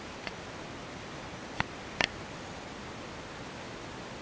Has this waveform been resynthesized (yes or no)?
no